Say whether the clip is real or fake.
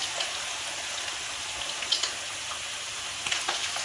real